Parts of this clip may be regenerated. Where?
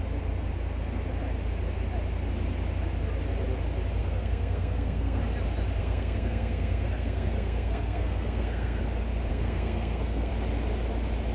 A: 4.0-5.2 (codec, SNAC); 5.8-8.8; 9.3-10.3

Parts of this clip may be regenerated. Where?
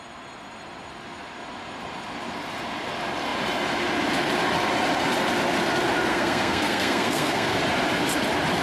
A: 6.1-7.6 (codec, SNAC)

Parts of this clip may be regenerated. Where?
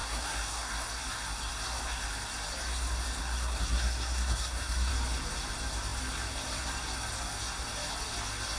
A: 0.0-0.7 (codec, SNAC); 3.2-4.9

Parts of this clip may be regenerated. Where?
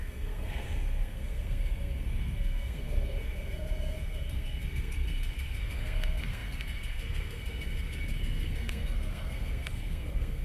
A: 0.0-10.4 (codec, SNAC)